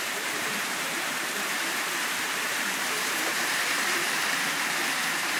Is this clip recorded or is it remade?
remade